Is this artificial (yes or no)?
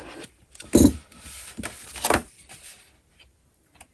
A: no